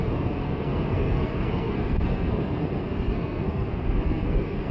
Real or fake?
fake